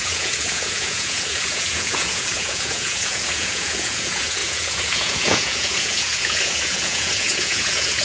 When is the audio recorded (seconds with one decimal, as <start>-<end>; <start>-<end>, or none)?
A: none